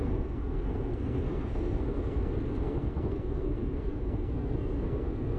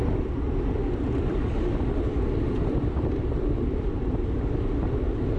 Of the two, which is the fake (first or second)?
first